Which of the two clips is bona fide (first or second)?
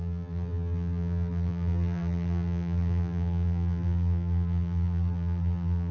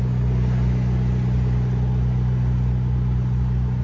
second